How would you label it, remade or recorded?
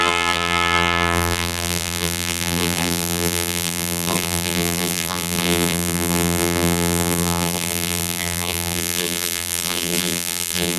remade